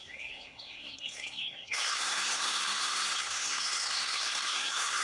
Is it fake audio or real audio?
fake